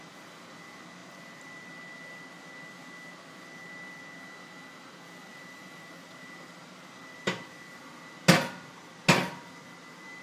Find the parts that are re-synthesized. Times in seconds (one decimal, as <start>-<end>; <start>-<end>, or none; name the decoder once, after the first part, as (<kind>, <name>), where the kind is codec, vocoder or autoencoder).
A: 5.3-7.8 (vocoder, BigVGAN v2)